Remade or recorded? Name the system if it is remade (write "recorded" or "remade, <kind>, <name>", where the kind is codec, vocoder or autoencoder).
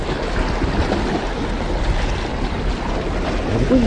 recorded